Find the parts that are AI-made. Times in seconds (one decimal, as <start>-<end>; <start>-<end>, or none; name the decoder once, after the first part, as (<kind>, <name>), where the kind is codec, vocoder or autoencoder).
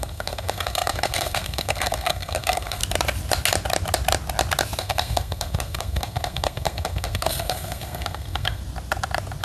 0.0-2.8 (codec, SNAC); 4.8-8.6